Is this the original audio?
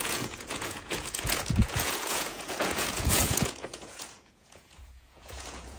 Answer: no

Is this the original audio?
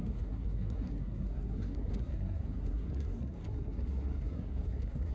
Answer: no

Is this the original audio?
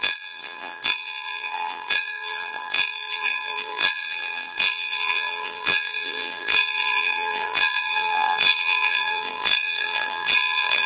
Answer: no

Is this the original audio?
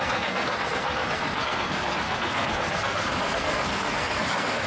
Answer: no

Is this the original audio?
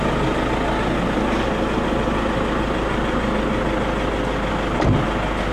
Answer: yes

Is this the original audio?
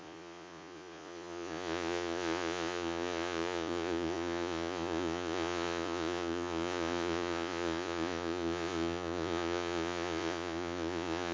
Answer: no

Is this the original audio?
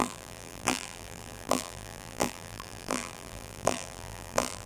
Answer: no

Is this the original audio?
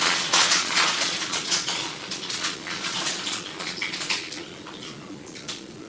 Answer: no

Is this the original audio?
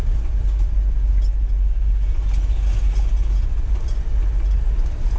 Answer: yes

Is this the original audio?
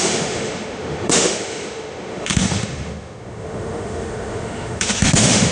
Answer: no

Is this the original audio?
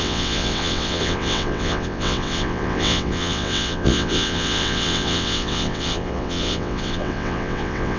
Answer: no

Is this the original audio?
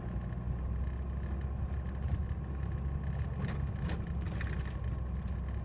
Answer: yes